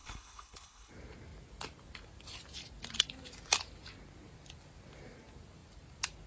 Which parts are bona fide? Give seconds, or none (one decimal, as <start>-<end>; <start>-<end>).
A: 0.9-6.3